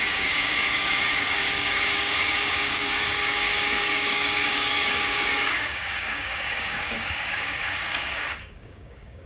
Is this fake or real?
fake